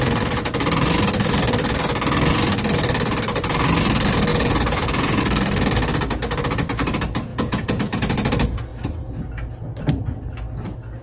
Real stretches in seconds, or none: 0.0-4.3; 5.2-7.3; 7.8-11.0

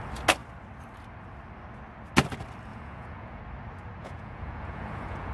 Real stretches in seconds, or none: 0.0-2.7; 3.4-4.0

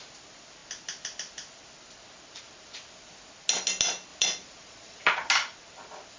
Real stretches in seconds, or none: 0.0-4.1; 5.3-6.2

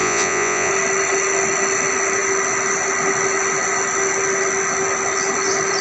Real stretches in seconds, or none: 0.7-5.8

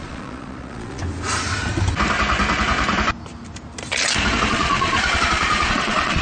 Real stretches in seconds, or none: 1.0-4.5